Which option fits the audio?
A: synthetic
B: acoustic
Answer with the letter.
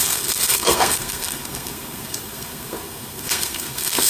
A